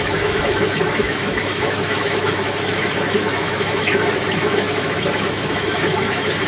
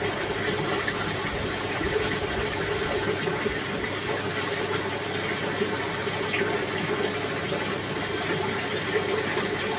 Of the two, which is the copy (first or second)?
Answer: first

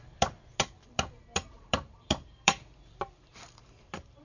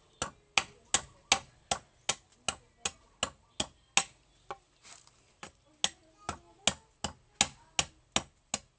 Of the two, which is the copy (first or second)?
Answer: first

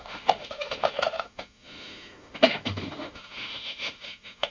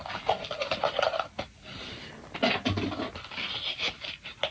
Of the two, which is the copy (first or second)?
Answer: first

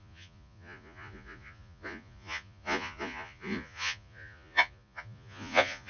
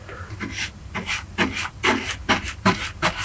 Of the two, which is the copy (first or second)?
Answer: first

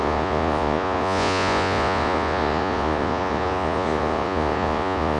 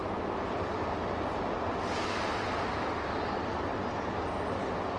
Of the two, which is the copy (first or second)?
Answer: first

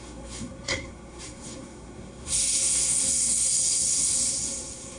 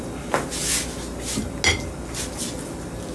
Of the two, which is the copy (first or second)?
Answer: first